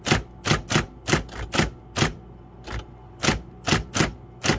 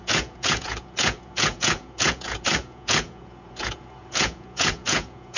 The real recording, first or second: first